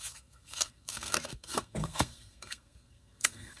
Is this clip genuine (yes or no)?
no